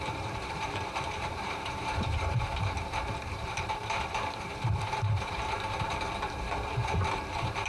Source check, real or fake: fake